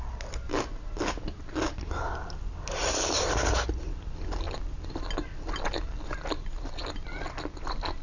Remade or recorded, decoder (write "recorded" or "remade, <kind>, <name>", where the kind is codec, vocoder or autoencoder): recorded